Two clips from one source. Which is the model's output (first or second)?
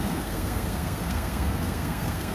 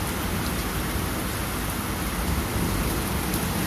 first